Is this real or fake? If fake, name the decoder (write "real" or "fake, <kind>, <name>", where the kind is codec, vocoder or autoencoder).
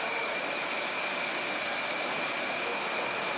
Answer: real